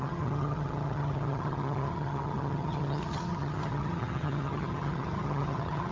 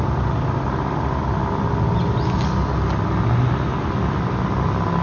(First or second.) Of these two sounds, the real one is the second